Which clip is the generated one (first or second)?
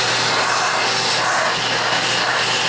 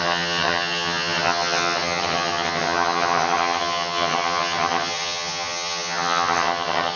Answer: second